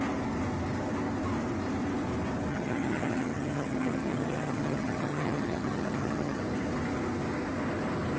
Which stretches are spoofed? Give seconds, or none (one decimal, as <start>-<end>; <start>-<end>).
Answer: 2.5-6.4